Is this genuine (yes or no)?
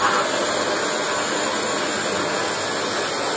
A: yes